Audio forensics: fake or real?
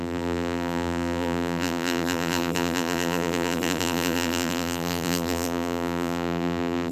fake